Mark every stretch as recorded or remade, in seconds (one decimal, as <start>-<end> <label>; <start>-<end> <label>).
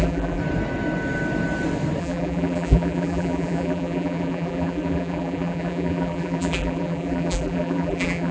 0.0-0.4 remade; 0.4-2.0 recorded; 2.0-8.3 remade